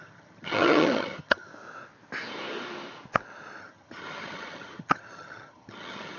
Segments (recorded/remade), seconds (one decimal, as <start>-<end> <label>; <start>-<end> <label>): 0.0-1.5 remade; 1.5-3.6 recorded; 3.6-6.2 remade